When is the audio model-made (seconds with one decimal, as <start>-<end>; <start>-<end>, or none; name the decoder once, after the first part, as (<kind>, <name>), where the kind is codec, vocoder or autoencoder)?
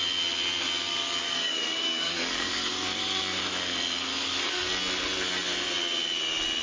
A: 0.9-3.2 (codec, DAC); 4.1-4.7